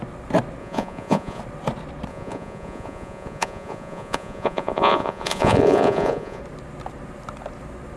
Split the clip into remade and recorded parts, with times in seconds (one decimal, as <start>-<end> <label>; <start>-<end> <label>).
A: 0.0-0.6 recorded; 0.6-1.4 remade; 1.4-2.1 recorded; 2.1-6.4 remade; 6.4-8.0 recorded